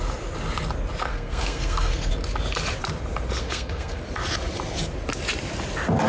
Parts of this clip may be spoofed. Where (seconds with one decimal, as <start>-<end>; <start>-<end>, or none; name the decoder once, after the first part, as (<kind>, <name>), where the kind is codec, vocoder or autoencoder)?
1.1-2.1 (codec, SNAC); 3.4-4.0